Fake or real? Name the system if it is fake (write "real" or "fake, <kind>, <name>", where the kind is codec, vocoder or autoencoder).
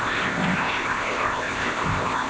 fake, codec, ZipCodec